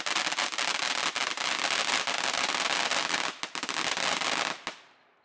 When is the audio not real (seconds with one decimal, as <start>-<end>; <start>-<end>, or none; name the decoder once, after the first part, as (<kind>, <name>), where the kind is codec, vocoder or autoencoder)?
none